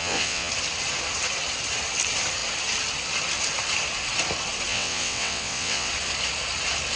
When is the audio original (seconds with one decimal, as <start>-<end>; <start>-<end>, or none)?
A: 0.5-4.7; 5.9-7.0